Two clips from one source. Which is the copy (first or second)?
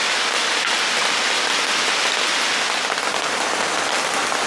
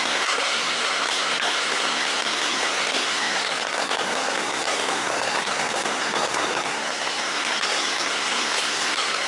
second